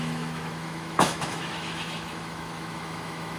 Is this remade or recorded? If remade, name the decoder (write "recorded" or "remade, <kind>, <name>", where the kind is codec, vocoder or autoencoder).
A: remade, autoencoder, DAC-VAE